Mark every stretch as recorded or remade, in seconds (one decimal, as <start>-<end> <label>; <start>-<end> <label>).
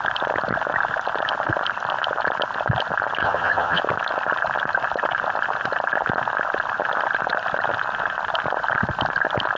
0.0-3.2 recorded; 3.2-3.8 remade; 3.8-9.6 recorded